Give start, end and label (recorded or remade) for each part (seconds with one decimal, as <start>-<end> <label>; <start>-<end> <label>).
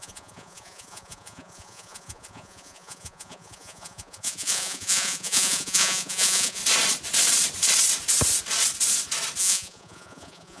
0.0-6.6 remade; 6.6-9.4 recorded; 9.4-10.6 remade